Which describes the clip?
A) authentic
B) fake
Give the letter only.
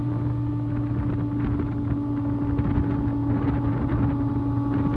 A